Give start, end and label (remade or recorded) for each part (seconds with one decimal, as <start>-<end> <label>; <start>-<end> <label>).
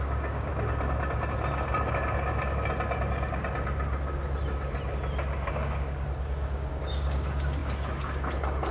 0.0-0.5 remade; 0.5-5.5 recorded; 5.5-8.7 remade